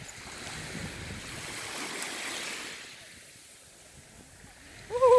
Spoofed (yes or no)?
no